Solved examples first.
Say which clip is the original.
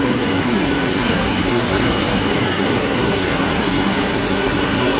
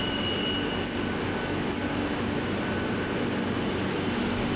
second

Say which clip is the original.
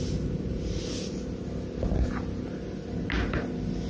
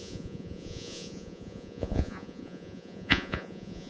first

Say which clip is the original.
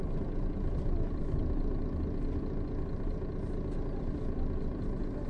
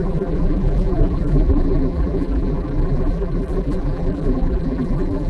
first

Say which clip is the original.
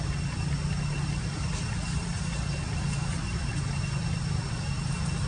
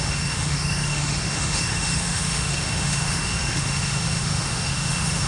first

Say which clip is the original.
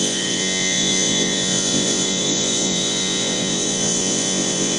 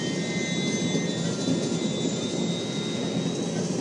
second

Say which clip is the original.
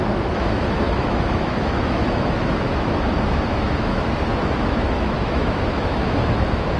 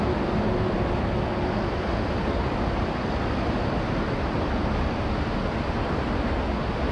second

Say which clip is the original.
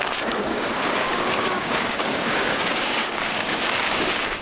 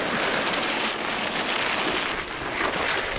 second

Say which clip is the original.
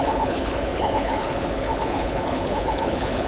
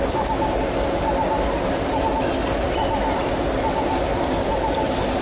second